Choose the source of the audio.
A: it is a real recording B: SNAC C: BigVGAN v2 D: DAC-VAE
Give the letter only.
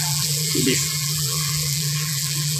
C